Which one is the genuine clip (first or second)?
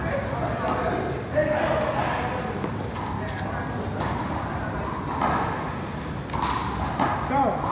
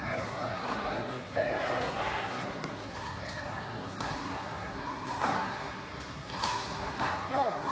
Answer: first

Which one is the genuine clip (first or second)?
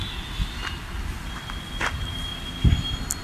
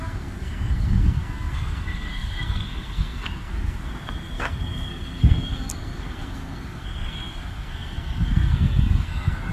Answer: first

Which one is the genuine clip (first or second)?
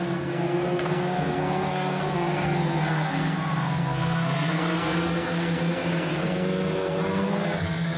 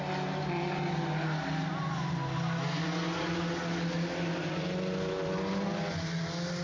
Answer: second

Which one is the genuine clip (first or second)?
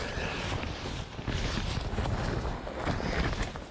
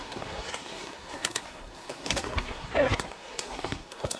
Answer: first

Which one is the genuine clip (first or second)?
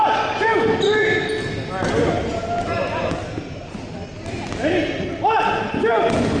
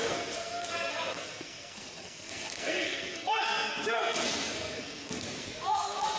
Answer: first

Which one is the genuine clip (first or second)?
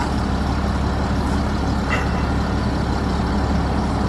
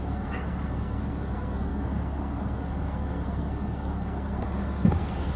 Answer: first